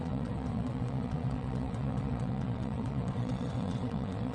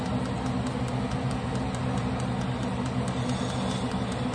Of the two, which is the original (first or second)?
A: second